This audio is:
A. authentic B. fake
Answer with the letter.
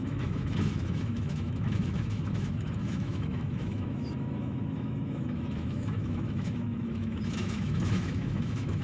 B